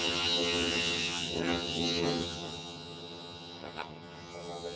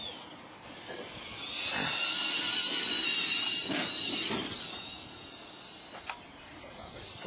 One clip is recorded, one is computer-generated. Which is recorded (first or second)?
second